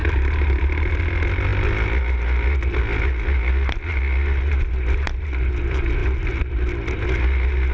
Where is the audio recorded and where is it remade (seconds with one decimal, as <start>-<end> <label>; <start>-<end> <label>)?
0.0-7.7 recorded